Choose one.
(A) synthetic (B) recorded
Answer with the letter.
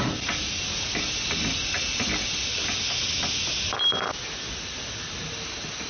B